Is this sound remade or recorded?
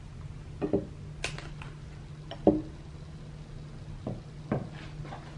recorded